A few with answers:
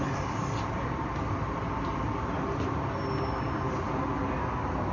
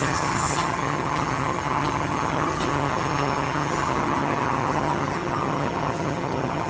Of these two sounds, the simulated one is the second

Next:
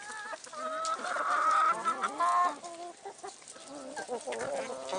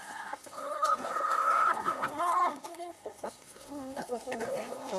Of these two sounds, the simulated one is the second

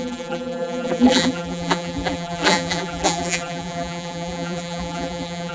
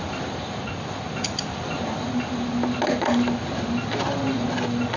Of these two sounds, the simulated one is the first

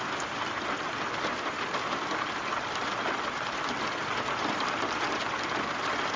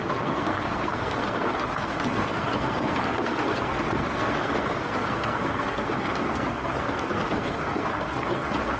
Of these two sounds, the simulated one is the second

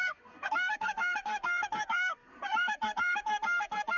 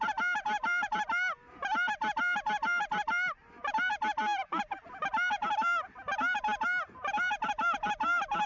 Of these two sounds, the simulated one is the first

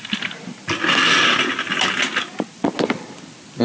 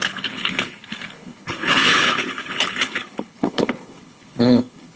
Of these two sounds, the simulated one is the second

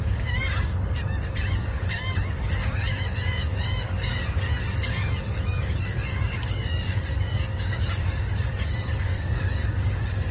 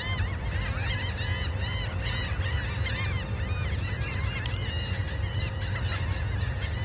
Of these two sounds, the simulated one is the first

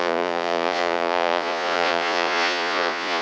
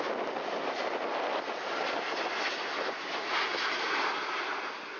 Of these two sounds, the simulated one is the first